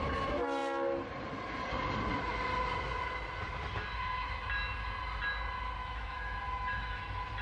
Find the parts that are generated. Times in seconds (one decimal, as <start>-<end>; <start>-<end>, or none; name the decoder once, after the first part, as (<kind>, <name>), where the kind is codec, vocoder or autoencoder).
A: 5.8-7.0 (autoencoder, DAC-VAE)

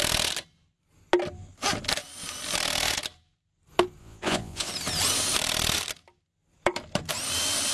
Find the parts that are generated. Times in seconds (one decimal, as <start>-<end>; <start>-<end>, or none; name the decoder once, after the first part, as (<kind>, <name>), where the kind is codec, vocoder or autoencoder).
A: 4.0-4.7 (vocoder, Vocos)